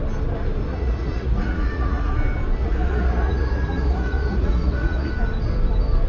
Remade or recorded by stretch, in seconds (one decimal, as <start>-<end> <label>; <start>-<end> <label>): 0.0-0.7 recorded; 0.7-2.1 remade; 2.1-2.6 recorded; 2.6-5.1 remade; 5.1-6.1 recorded

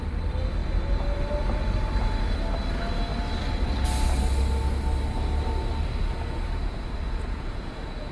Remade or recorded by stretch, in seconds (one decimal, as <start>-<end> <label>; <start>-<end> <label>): 0.0-6.0 recorded; 6.0-8.1 remade

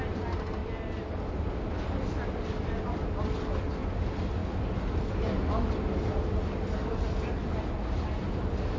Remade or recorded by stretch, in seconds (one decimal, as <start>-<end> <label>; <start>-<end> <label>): 0.0-8.8 recorded

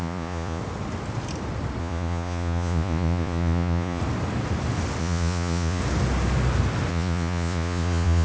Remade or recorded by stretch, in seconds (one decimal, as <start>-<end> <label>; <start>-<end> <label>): 0.0-0.6 remade; 0.6-1.8 recorded; 1.8-4.0 remade; 4.0-5.0 recorded; 5.0-5.8 remade; 5.8-6.9 recorded; 6.9-8.2 remade